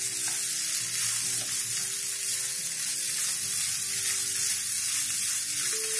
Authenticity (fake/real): real